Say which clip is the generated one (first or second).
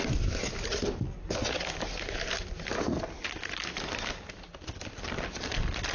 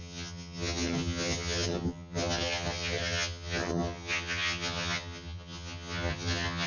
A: second